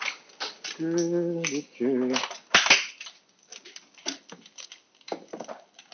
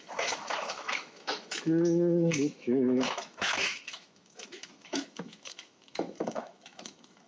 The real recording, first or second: first